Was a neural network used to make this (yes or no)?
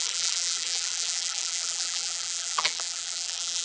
yes